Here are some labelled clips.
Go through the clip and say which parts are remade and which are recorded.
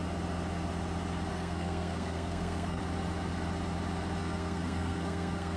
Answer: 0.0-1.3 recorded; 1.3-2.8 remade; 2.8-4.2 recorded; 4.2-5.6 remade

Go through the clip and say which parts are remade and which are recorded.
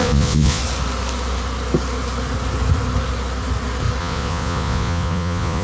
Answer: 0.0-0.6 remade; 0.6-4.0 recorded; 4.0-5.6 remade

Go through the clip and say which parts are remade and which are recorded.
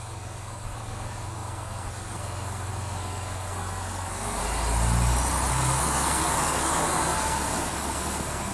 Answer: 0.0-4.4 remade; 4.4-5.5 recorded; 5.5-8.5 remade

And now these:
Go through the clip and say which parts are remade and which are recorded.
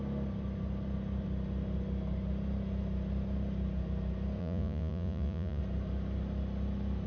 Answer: 0.0-4.4 recorded; 4.4-5.6 remade; 5.6-7.1 recorded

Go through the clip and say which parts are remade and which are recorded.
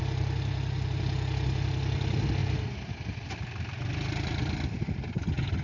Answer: 0.0-5.6 recorded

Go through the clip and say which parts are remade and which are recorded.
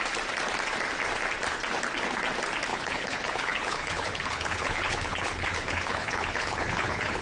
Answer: 0.0-2.7 recorded; 2.7-7.2 remade